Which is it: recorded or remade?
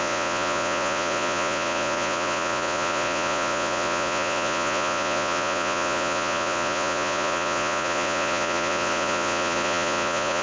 remade